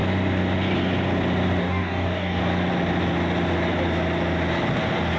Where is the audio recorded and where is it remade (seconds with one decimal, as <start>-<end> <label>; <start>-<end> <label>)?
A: 0.0-1.6 recorded; 1.6-2.4 remade; 2.4-5.2 recorded